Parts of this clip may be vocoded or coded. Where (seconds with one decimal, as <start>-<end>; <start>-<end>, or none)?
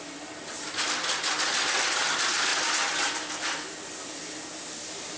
none